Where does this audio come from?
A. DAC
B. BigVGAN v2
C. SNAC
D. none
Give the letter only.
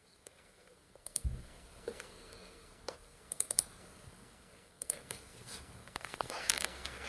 C